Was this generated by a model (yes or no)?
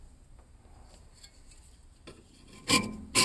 no